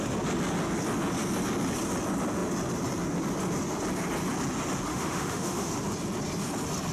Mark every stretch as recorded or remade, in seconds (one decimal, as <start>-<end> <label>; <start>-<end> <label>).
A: 0.0-4.9 recorded; 4.9-5.7 remade; 5.7-6.9 recorded